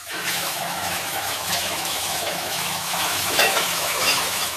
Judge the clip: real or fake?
fake